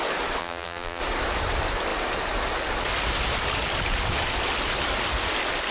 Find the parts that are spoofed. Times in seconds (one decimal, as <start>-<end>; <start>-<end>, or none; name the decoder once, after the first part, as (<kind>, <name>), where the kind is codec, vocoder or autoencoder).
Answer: 0.4-1.0 (vocoder, BigVGAN v2)